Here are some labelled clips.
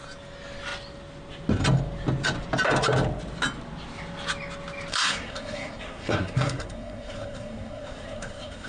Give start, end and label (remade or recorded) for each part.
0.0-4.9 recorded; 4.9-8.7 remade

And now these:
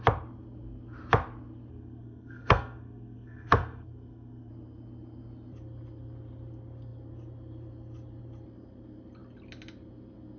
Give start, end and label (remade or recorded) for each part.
0.0-1.7 recorded; 1.7-4.5 remade; 4.5-10.4 recorded

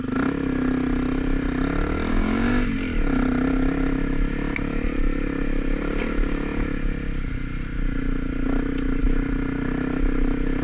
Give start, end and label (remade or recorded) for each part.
0.0-2.1 recorded; 2.1-2.7 remade; 2.7-10.6 recorded

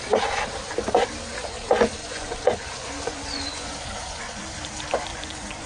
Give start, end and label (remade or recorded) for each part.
0.0-2.0 recorded; 2.0-4.4 remade; 4.4-5.1 recorded; 5.1-5.7 remade